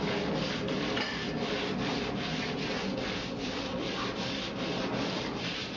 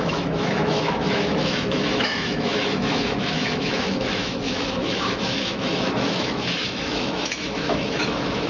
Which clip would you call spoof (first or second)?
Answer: second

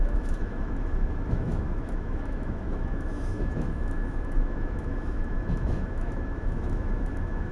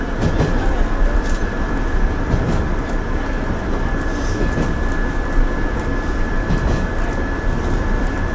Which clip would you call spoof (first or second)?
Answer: first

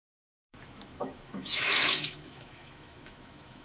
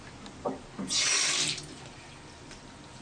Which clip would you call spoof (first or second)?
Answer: first